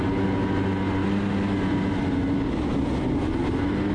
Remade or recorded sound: recorded